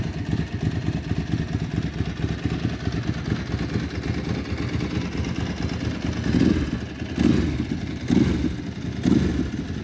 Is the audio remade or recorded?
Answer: recorded